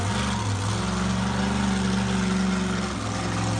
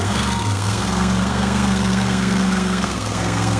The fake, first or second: second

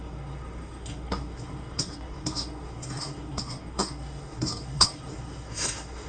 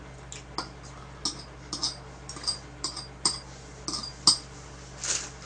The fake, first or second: first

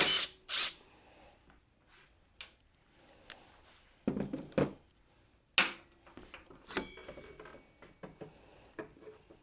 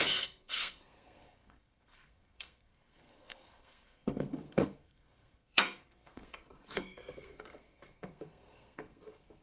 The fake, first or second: second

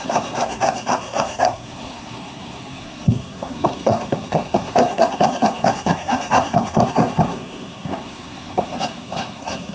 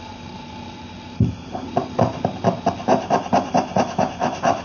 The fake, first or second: first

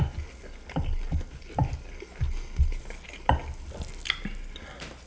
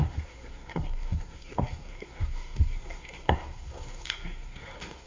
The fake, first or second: second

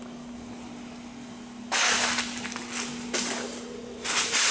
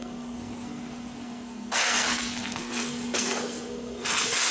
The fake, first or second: second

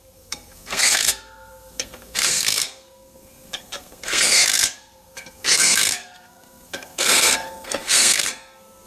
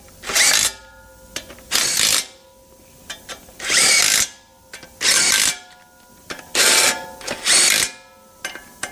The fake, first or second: first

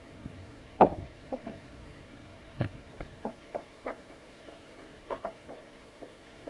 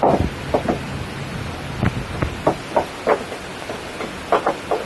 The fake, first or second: first